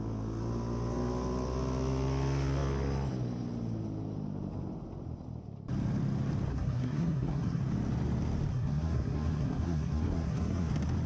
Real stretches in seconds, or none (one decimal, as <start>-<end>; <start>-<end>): 0.0-6.5; 7.6-8.5; 10.7-11.1